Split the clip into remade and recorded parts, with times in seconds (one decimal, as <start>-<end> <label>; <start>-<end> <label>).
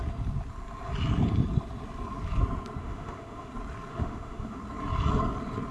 0.0-2.8 recorded; 2.8-3.5 remade; 3.5-3.9 recorded; 3.9-4.6 remade; 4.6-5.7 recorded